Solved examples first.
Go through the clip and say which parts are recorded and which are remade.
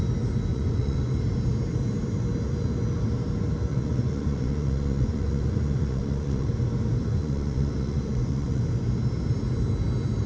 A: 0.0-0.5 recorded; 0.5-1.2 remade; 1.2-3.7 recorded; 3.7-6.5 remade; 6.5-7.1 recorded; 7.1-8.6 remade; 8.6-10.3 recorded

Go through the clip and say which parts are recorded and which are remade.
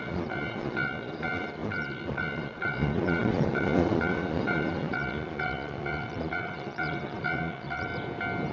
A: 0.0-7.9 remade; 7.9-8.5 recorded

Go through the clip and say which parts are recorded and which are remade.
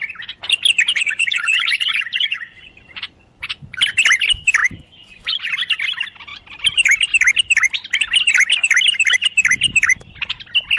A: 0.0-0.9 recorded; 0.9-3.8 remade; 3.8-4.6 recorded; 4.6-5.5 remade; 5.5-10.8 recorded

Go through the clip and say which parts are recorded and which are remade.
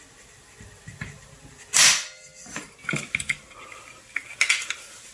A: 0.0-5.1 recorded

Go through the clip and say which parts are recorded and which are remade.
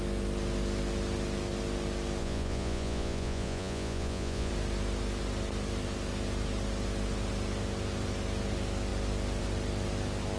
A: 0.0-2.2 recorded; 2.2-4.5 remade; 4.5-10.4 recorded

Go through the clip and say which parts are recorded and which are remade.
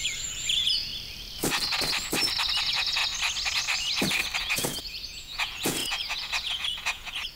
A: 0.0-0.9 remade; 0.9-2.6 recorded; 2.6-3.0 remade; 3.0-4.4 recorded; 4.4-7.4 remade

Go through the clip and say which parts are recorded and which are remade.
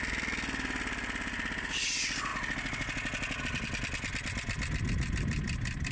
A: 0.0-5.9 recorded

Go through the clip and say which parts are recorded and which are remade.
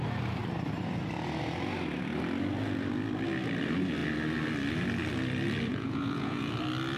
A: 0.0-5.7 recorded; 5.7-6.5 remade; 6.5-7.0 recorded